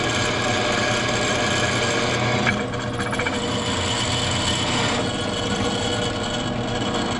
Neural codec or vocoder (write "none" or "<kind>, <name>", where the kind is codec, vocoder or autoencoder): none